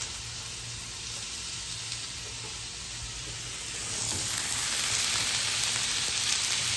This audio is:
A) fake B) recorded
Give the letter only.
B